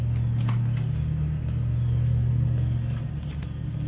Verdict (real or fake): real